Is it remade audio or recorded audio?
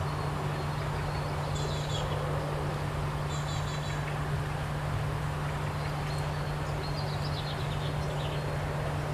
recorded